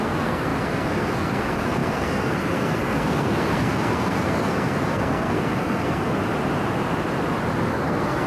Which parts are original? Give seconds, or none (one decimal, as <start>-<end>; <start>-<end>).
6.2-7.7